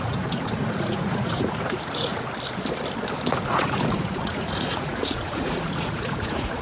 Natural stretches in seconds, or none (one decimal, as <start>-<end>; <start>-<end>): 2.1-3.5